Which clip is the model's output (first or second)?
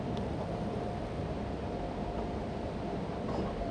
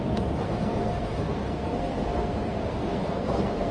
second